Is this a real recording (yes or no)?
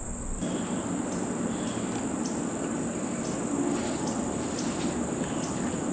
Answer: yes